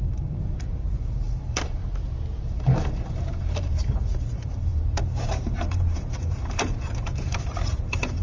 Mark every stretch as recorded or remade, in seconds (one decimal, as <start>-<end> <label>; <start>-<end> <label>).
0.0-1.8 remade; 1.8-2.4 recorded; 2.4-8.2 remade